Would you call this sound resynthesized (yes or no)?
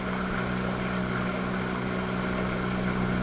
no